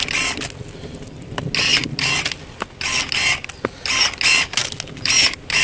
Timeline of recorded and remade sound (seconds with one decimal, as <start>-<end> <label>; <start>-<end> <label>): 0.0-5.6 recorded